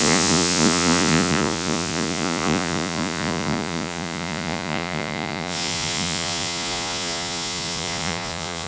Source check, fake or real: fake